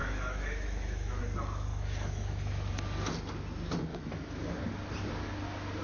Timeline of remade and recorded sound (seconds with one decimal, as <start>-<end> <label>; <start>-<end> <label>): 0.0-1.2 remade; 1.2-1.7 recorded; 1.7-2.7 remade; 2.7-3.9 recorded; 3.9-4.5 remade; 4.5-5.8 recorded